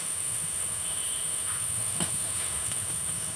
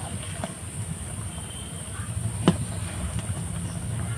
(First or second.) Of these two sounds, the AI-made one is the first